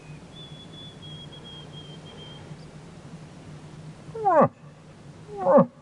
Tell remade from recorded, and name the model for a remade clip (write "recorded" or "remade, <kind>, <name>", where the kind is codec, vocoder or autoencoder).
recorded